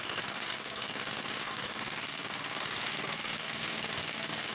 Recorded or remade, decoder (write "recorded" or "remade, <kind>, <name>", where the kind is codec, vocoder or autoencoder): remade, codec, DAC